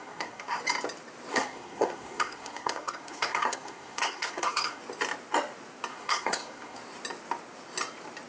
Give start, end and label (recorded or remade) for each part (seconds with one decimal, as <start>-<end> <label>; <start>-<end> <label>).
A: 0.0-0.6 remade; 0.6-1.3 recorded; 1.3-4.8 remade; 4.8-5.9 recorded; 5.9-6.8 remade; 6.8-8.3 recorded